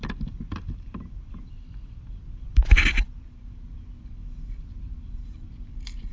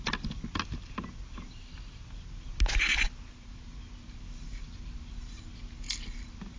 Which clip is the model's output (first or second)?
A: first